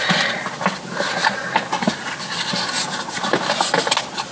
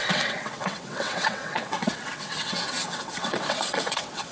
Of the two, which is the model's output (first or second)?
second